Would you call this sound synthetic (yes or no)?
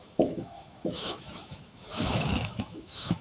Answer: yes